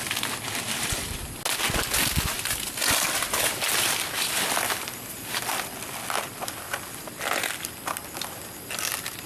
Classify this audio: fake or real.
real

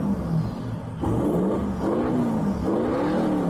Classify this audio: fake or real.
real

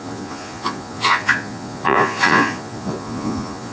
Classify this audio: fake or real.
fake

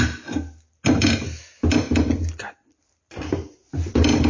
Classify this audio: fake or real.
real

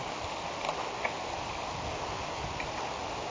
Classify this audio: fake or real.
real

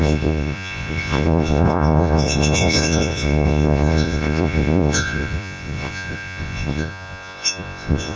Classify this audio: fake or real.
fake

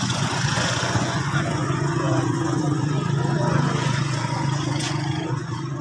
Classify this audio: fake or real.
fake